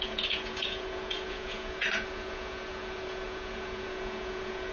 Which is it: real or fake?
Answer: fake